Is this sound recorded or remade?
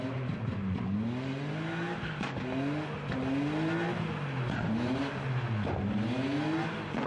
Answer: recorded